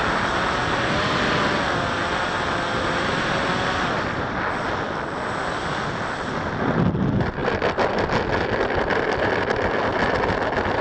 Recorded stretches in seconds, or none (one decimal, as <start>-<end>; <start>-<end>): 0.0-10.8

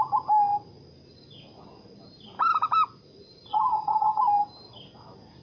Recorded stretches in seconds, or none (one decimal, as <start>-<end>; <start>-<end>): 0.0-3.5; 4.2-5.4

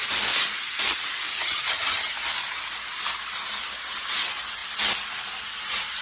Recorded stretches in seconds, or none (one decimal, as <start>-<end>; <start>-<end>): 0.0-1.3; 2.1-6.0

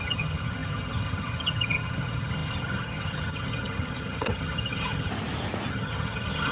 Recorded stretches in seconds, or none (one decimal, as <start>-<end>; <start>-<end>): 5.1-5.7